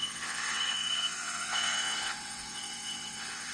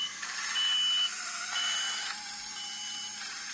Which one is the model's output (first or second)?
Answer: first